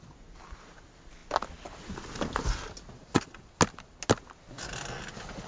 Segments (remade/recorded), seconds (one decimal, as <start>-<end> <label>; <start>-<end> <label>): 0.0-3.0 recorded; 3.0-3.5 remade; 3.5-5.5 recorded